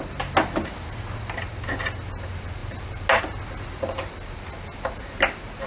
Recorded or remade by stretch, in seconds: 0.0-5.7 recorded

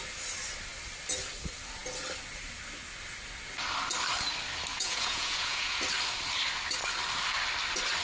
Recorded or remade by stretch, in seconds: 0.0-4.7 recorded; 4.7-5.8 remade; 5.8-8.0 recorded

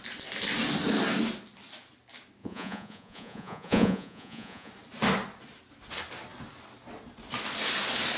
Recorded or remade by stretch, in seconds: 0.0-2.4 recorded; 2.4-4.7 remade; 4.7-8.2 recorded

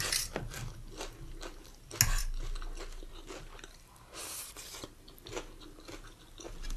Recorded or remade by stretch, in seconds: 0.0-6.8 recorded

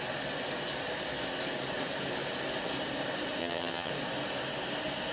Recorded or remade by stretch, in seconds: 0.0-3.4 recorded; 3.4-3.9 remade; 3.9-5.1 recorded